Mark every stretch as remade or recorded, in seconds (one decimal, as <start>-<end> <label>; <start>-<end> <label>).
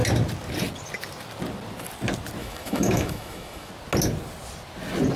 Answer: 0.0-2.4 recorded; 2.4-3.7 remade; 3.7-5.2 recorded